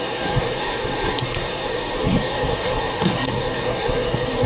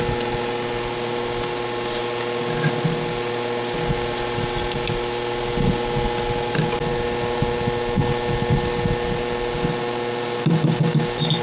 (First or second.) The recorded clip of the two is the second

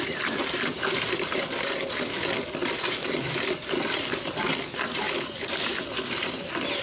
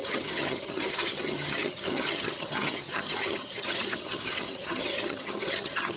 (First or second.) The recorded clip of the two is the first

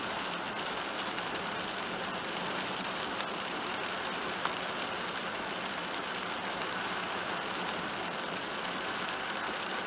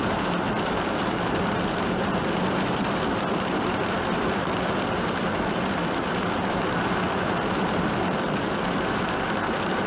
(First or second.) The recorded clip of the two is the first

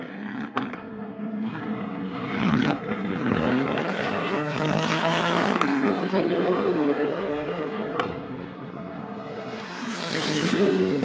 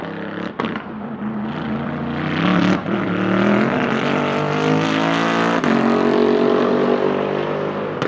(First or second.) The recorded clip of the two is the second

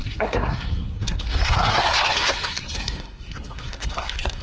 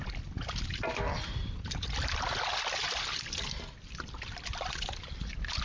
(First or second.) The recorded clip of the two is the second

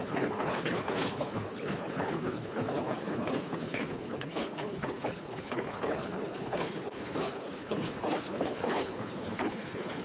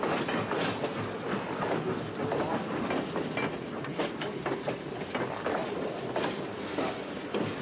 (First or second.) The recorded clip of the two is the second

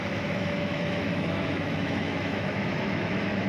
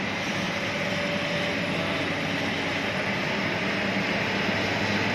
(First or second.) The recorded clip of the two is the second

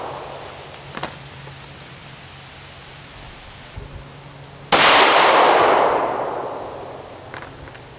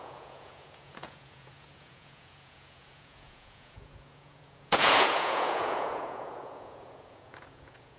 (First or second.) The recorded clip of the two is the first